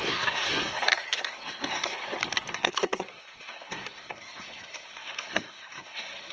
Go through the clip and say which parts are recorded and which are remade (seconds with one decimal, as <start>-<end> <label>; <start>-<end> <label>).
0.0-2.0 remade; 2.0-2.5 recorded; 2.5-6.3 remade